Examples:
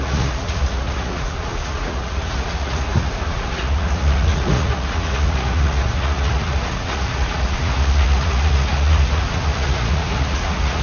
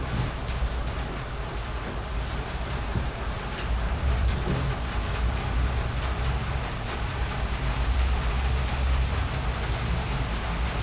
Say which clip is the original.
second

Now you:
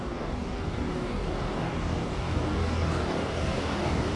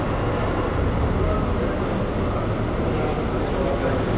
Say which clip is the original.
second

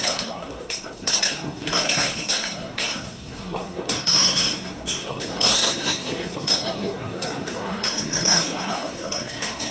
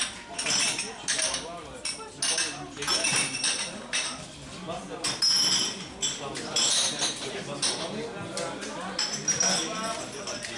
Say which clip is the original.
second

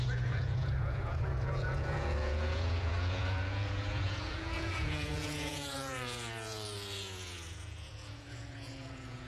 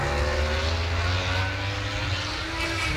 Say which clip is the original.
second